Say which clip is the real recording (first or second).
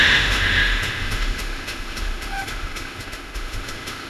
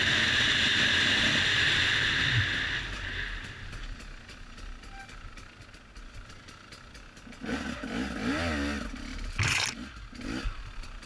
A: second